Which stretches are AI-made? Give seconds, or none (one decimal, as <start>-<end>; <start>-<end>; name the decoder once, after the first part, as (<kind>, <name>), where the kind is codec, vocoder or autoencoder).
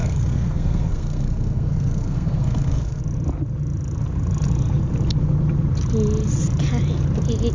0.0-3.0 (codec, SNAC)